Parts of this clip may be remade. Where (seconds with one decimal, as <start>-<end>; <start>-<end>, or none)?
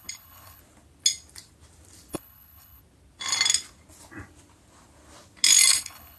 0.0-0.6; 2.1-2.8; 5.7-6.2